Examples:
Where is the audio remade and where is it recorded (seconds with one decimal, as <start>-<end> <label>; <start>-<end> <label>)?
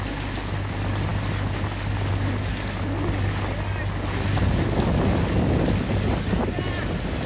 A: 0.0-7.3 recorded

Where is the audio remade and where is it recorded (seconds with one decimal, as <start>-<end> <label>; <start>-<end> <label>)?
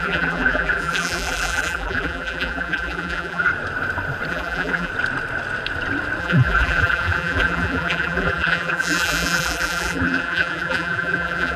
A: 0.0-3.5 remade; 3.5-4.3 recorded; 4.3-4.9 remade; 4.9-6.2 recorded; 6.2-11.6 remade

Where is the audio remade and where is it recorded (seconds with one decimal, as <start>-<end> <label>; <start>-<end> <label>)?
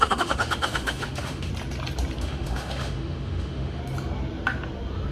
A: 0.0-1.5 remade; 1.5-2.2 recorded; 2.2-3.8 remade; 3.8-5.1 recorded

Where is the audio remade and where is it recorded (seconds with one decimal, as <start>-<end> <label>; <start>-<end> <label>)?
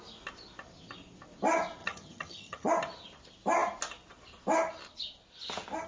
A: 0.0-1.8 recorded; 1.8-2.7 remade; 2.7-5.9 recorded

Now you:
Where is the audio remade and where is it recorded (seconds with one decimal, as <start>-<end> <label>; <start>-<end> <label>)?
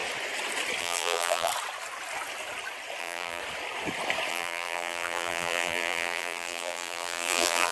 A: 0.0-0.8 recorded; 0.8-1.5 remade; 1.5-3.0 recorded; 3.0-3.4 remade; 3.4-4.3 recorded; 4.3-7.7 remade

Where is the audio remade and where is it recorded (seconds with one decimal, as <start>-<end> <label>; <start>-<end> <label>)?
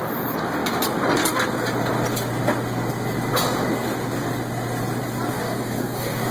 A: 0.0-5.3 recorded; 5.3-6.3 remade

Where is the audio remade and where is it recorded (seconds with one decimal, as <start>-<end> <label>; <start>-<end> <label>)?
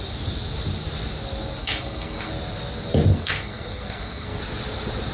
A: 0.0-1.6 recorded; 1.6-2.3 remade; 2.3-3.1 recorded; 3.1-4.4 remade; 4.4-5.1 recorded